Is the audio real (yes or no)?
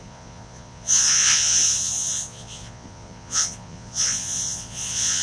no